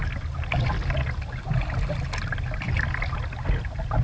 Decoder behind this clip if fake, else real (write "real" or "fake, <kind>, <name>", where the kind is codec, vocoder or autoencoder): real